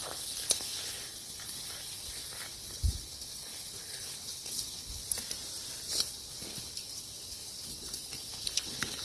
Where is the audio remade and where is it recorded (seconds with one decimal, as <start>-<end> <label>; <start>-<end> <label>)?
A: 0.0-5.0 remade; 5.0-6.0 recorded; 6.0-9.0 remade